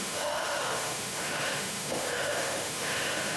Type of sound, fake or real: fake